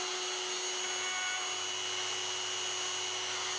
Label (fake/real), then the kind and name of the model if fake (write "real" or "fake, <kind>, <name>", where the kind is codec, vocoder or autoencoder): real